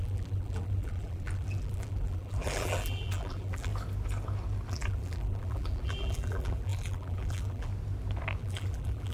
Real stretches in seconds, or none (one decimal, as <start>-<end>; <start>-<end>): 3.7-4.7; 7.7-8.4

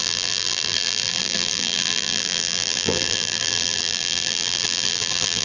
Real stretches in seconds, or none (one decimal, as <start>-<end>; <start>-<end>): none

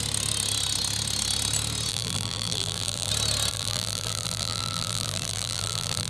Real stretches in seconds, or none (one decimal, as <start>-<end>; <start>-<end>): 0.0-1.9; 3.1-3.5

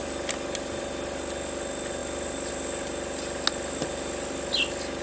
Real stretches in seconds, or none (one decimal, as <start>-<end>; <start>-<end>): 0.0-5.0

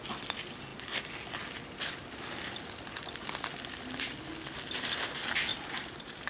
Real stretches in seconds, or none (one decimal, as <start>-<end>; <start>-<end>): 0.0-5.5

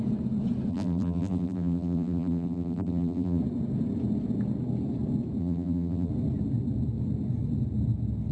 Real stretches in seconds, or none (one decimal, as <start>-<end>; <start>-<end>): 0.0-0.7; 3.4-5.4; 6.1-8.3